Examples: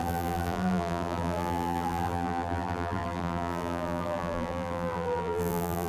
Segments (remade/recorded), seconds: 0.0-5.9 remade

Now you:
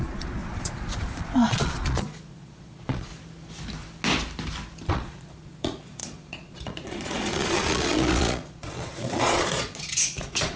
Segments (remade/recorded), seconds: 0.0-3.1 remade; 3.1-4.9 recorded; 4.9-10.6 remade